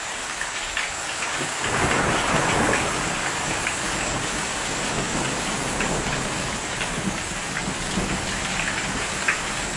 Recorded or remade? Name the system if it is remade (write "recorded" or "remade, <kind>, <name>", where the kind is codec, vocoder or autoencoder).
remade, codec, DAC